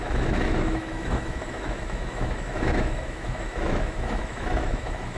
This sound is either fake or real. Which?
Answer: fake